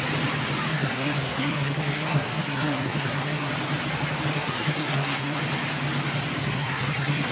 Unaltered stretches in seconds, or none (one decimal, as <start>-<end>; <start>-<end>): 0.0-0.7; 3.5-4.3; 5.4-6.4

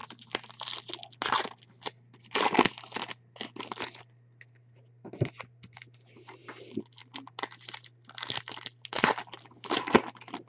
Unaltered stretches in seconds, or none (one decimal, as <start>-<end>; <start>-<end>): 0.0-10.5

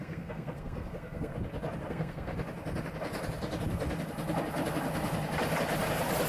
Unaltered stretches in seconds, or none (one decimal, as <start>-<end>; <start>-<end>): 1.3-1.9; 2.3-6.3